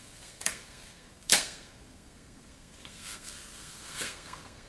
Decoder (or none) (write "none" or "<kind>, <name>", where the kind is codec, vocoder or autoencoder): codec, SNAC